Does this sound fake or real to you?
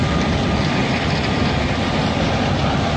real